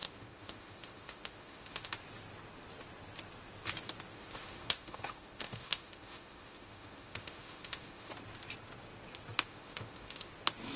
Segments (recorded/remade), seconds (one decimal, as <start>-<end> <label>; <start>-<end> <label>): 0.0-1.9 remade; 1.9-4.1 recorded; 4.1-8.1 remade; 8.1-9.5 recorded; 9.5-10.3 remade; 10.3-10.8 recorded